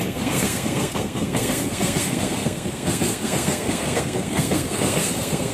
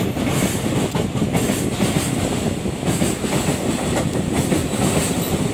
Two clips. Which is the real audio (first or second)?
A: second